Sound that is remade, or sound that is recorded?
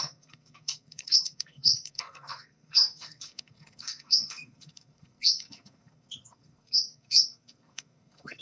remade